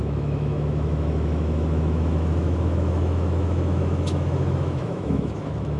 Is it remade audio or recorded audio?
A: remade